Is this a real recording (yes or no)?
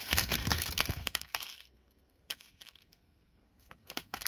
no